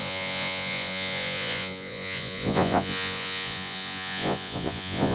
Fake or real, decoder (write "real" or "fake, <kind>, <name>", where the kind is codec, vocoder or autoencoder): fake, vocoder, Vocos